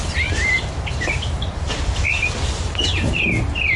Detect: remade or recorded remade